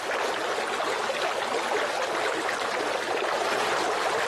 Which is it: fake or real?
real